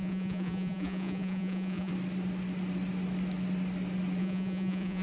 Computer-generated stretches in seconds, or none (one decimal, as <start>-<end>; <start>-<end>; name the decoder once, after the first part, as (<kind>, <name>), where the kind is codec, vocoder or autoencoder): 0.0-1.9 (vocoder, Vocos); 4.2-5.0